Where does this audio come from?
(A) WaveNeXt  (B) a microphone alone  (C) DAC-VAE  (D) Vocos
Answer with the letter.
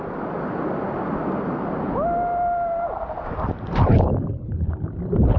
B